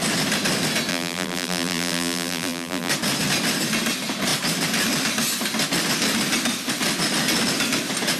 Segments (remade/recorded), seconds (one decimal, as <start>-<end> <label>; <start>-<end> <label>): 0.0-0.9 recorded; 0.9-2.9 remade; 2.9-8.2 recorded